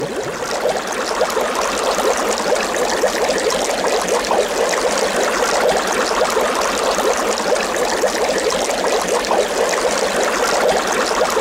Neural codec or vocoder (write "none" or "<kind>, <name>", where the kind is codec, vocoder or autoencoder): none